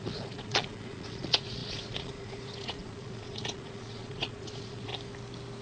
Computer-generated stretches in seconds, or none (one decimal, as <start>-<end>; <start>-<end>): 0.0-4.9

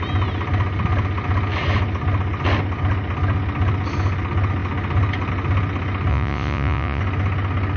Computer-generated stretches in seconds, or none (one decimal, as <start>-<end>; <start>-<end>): 6.1-7.0

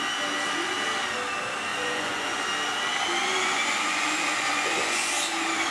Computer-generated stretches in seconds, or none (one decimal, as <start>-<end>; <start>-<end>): 1.7-2.4; 3.2-5.1

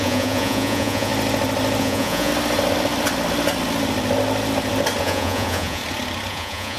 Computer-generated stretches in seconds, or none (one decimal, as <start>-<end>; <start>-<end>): 0.0-1.1; 1.8-2.3; 5.0-5.8; 6.3-6.8

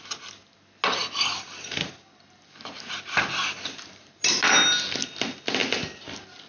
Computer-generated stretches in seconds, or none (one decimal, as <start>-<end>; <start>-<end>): none

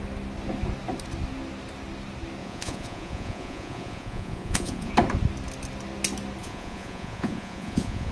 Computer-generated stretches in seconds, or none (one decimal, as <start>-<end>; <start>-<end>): 2.4-4.9; 6.4-8.1

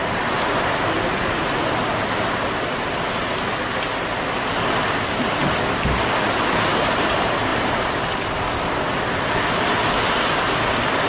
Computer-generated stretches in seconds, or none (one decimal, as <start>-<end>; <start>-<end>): none

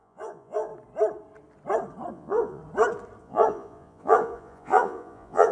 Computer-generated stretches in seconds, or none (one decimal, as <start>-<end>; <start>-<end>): 0.0-0.7; 2.1-2.6; 3.2-5.5